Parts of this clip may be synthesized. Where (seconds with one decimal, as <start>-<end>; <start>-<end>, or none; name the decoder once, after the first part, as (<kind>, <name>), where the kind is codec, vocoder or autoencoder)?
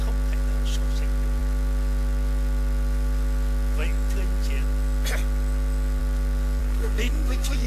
6.6-7.7 (codec, SNAC)